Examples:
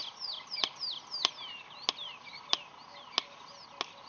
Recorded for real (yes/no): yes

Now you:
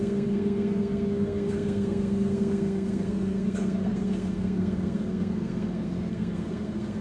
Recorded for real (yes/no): no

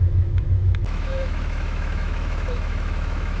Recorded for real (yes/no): no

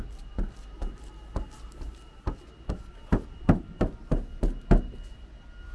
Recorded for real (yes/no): yes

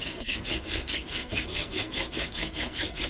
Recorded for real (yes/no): no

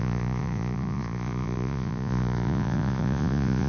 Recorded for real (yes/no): no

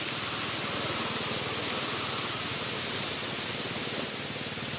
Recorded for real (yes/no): yes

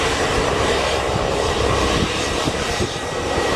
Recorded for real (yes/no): no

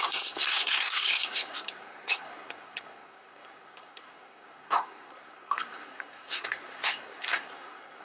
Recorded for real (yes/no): no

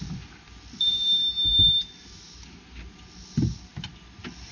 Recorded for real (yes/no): yes